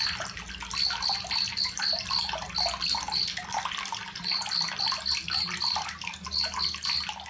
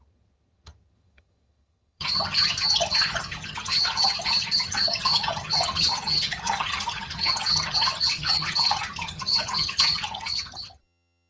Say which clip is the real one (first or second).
first